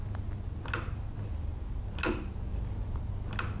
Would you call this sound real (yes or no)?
yes